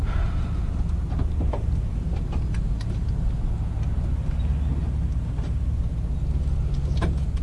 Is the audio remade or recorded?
recorded